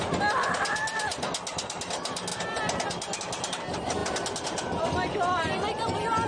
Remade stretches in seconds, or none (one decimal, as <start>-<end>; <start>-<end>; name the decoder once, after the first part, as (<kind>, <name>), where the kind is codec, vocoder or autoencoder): none